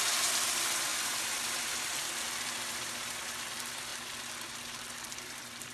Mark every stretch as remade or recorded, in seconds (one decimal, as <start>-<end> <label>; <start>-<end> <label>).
0.0-3.9 remade; 3.9-5.1 recorded; 5.1-5.7 remade

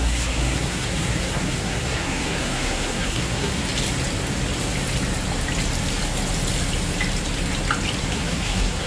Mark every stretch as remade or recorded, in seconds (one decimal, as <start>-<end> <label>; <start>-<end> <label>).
0.0-3.6 remade; 3.6-8.0 recorded; 8.0-8.9 remade

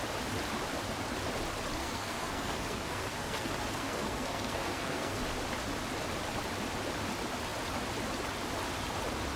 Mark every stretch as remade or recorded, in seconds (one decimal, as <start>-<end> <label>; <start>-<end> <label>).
0.0-1.8 recorded; 1.8-5.2 remade; 5.2-9.4 recorded

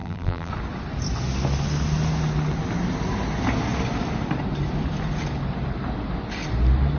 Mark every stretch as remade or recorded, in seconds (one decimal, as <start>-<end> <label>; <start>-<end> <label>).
0.0-0.5 remade; 0.5-7.0 recorded

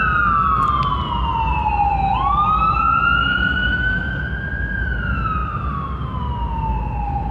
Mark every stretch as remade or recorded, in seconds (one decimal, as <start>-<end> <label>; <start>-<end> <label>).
0.0-3.2 recorded; 3.2-4.1 remade; 4.1-7.3 recorded

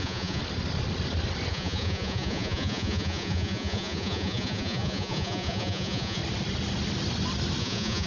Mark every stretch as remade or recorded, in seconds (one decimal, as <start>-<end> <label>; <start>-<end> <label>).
0.0-0.4 remade; 0.4-1.5 recorded; 1.5-6.2 remade; 6.2-7.6 recorded; 7.6-8.1 remade